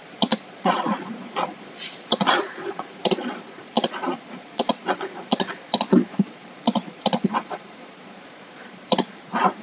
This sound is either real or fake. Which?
fake